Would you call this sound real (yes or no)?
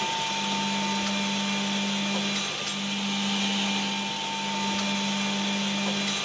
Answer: yes